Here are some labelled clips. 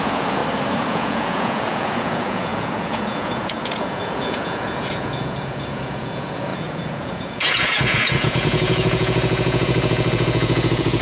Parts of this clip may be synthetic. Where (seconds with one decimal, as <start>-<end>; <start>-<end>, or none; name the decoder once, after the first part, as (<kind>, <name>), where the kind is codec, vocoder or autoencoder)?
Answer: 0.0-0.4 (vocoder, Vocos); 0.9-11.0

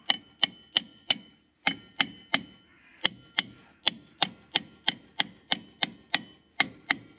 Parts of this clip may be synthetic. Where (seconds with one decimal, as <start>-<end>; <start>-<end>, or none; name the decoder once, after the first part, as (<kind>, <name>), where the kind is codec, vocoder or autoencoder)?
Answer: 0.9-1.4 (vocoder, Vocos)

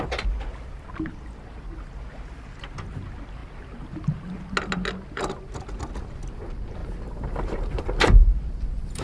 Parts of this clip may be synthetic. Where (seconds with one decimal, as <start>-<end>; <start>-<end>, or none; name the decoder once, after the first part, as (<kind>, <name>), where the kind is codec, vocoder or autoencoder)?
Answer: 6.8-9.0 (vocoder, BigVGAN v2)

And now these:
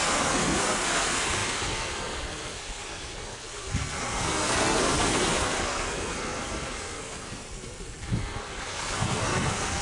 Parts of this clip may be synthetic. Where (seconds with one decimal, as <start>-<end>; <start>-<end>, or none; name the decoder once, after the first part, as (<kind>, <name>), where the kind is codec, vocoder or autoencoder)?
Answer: 0.0-9.8 (codec, SNAC)

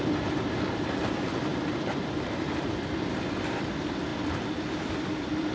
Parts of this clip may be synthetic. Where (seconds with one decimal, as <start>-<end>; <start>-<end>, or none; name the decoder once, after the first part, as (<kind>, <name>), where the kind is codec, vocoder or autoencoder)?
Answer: 0.0-1.5 (vocoder, BigVGAN v2); 2.4-5.5

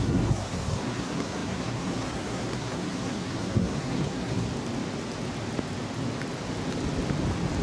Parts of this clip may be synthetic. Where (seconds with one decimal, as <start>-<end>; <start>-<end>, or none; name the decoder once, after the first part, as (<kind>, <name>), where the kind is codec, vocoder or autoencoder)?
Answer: 0.0-4.5 (codec, SNAC)